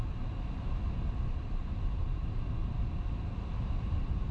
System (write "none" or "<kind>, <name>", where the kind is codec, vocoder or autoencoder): none